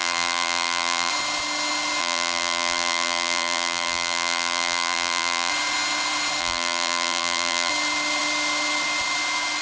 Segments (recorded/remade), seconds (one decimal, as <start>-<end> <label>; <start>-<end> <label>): 0.0-1.1 remade; 1.1-2.0 recorded; 2.0-5.5 remade; 5.5-6.4 recorded; 6.4-7.7 remade; 7.7-9.6 recorded